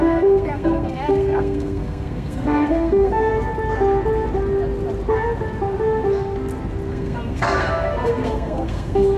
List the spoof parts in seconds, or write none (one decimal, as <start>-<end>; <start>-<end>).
0.0-3.3; 6.9-9.2